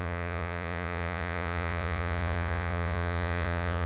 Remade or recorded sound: remade